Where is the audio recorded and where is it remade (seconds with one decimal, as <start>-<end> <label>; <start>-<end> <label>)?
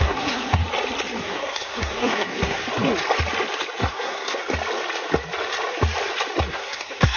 0.0-0.6 remade; 0.6-1.2 recorded; 1.2-2.6 remade; 2.6-3.9 recorded; 3.9-4.4 remade; 4.4-6.5 recorded; 6.5-7.2 remade